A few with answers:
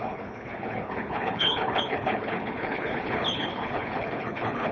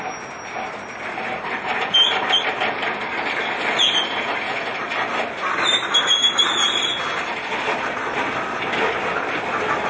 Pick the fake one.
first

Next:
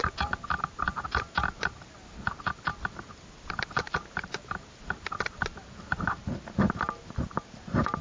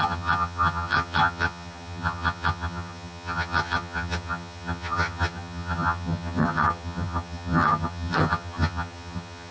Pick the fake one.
second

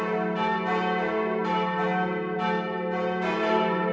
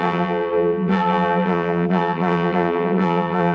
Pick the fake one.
second